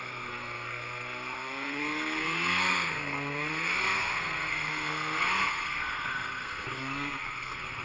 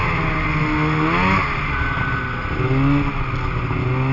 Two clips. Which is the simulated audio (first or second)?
first